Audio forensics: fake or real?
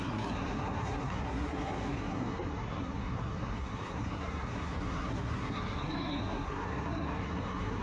fake